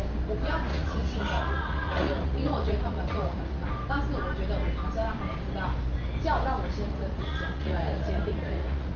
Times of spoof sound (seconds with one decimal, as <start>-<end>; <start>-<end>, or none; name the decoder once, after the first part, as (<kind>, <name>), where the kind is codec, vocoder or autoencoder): 0.7-3.7 (vocoder, Vocos); 6.9-9.0